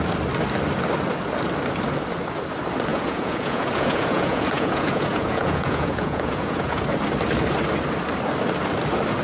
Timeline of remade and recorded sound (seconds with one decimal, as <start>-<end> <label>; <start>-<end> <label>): 0.0-2.9 recorded; 2.9-6.8 remade; 6.8-9.2 recorded